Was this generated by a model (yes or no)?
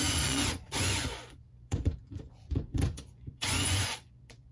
yes